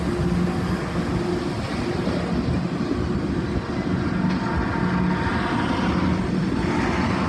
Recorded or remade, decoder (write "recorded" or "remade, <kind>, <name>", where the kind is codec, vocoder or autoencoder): recorded